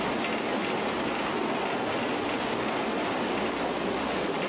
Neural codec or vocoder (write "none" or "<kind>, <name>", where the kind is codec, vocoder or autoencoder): none